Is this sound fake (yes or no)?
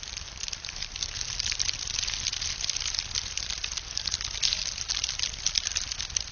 no